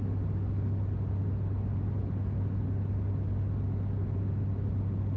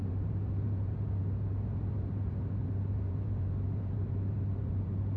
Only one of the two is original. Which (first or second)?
first